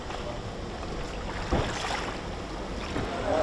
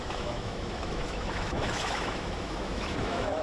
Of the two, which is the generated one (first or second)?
second